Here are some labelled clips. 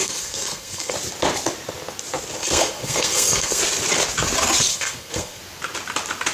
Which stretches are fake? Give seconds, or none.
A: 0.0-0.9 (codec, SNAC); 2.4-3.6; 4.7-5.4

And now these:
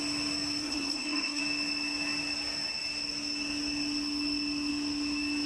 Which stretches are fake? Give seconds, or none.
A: 0.6-1.4 (codec, SNAC)

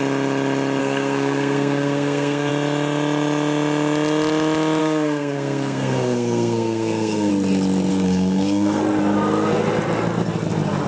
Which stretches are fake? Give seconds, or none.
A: 0.8-2.5 (codec, SNAC); 4.8-7.3; 7.9-8.8